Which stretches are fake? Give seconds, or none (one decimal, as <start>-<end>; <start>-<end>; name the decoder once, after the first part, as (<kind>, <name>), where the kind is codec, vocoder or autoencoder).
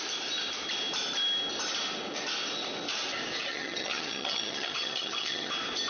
3.5-5.5 (vocoder, HiFi-GAN)